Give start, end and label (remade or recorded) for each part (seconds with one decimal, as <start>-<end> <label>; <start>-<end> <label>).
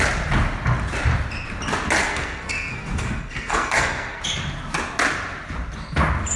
0.0-2.0 recorded; 2.0-4.2 remade; 4.2-6.4 recorded